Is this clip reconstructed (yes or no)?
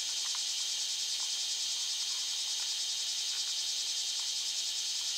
no